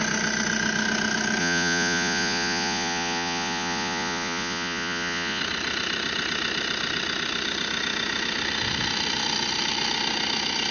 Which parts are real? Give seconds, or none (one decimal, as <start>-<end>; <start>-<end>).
0.0-1.4; 5.4-10.7